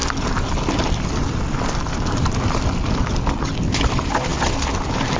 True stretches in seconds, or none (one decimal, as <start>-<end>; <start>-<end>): 0.0-5.2